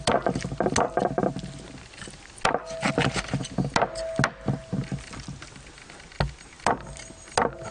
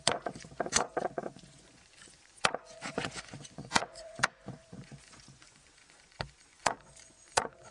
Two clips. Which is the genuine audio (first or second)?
first